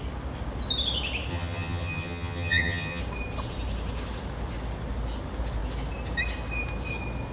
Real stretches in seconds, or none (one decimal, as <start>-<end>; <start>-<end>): 0.0-1.3; 3.0-7.3